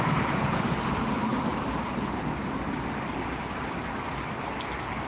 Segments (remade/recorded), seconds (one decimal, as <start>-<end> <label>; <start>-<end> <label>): 0.0-5.1 recorded